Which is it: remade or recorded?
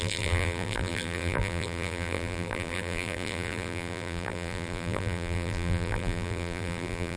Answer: remade